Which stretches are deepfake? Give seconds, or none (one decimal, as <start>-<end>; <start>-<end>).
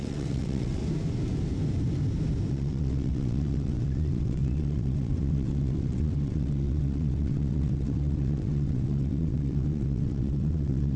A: 0.0-0.8; 2.5-11.0